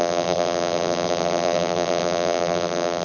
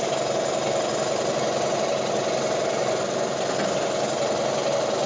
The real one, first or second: second